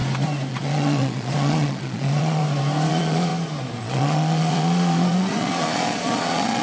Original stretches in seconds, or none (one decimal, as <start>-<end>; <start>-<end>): 0.0-0.5; 2.4-2.9; 3.3-3.8